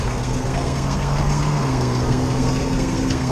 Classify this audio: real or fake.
fake